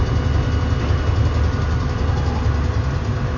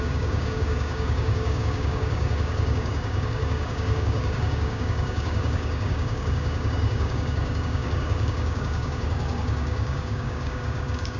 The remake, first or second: second